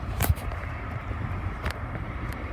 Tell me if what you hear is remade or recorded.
remade